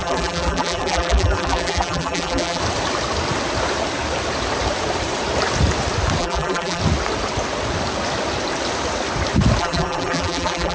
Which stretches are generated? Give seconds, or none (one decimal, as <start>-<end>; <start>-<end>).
0.0-2.6; 6.2-6.8; 9.6-10.7